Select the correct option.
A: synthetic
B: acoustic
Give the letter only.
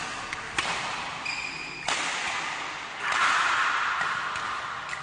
B